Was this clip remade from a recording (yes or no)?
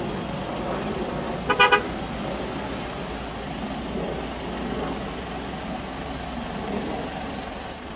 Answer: no